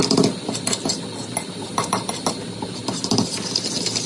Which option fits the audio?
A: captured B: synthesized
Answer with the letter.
A